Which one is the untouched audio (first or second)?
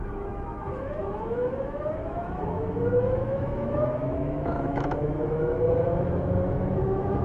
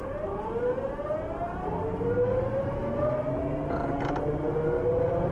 second